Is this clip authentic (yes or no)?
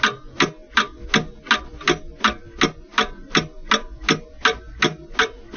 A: yes